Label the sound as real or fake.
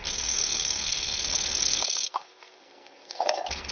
fake